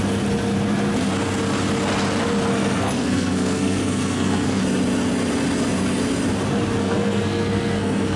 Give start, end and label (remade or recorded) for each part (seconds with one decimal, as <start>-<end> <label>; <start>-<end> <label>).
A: 0.0-2.5 recorded; 2.5-4.6 remade; 4.6-6.8 recorded; 6.8-8.2 remade